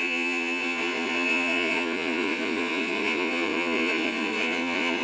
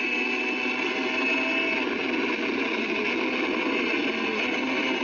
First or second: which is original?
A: second